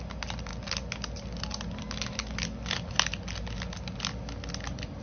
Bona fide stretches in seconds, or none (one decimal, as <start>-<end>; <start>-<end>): 0.0-5.0